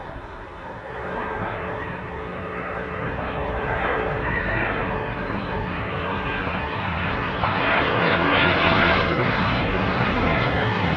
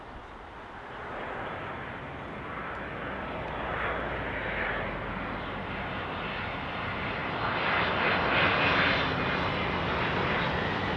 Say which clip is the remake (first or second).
first